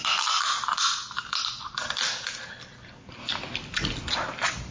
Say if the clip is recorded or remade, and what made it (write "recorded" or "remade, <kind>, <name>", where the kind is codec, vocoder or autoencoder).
recorded